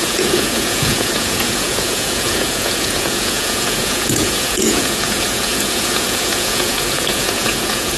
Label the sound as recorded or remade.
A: remade